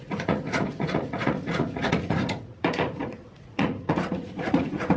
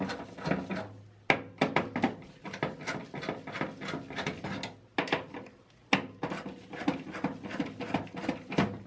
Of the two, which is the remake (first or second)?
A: first